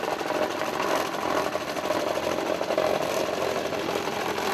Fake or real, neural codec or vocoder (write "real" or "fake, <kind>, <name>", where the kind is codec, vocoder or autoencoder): real